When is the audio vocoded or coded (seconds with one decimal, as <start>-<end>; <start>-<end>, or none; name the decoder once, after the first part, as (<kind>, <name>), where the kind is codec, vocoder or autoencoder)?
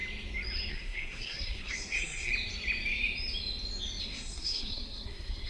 0.7-2.3 (codec, SNAC); 4.0-5.5